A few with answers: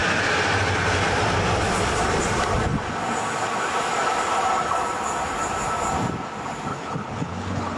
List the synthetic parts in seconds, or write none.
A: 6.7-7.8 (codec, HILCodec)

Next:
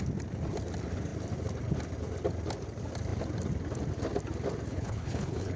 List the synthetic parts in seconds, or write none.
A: 4.7-5.6 (codec, HILCodec)

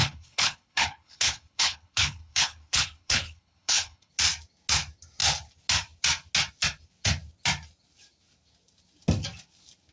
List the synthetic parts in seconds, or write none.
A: 0.0-4.1 (codec, HILCodec)